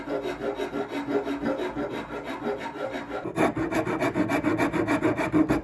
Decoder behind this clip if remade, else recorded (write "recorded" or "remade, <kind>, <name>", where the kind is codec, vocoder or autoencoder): recorded